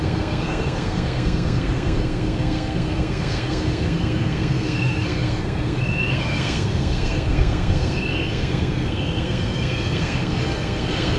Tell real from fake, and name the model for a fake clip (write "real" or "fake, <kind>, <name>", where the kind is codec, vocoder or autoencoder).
fake, codec, SNAC